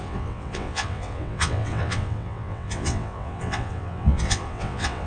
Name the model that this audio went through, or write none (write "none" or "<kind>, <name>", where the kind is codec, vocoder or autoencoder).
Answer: vocoder, WaveNeXt